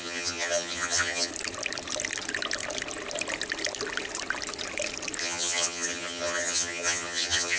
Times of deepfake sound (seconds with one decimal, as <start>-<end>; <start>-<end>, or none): 0.0-1.3; 5.2-7.6